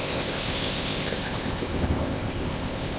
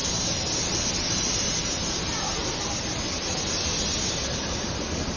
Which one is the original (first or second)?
second